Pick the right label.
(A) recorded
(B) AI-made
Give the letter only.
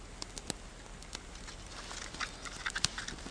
A